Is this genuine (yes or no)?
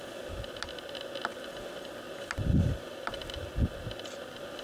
yes